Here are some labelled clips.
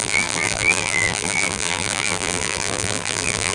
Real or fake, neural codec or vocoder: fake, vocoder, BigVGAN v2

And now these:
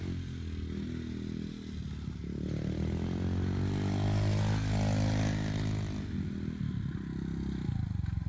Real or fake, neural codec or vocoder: real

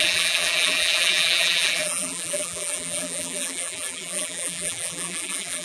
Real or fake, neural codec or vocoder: fake, vocoder, BigVGAN v2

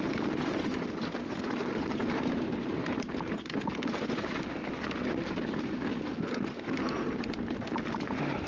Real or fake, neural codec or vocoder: fake, vocoder, BigVGAN v2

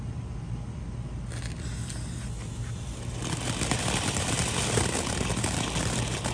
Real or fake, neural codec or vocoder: real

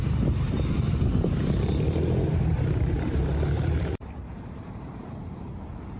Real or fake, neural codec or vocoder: fake, vocoder, BigVGAN v2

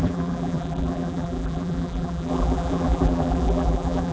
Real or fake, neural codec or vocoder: fake, vocoder, BigVGAN v2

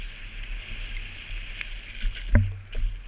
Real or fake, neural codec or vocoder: real